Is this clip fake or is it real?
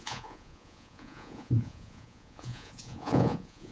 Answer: fake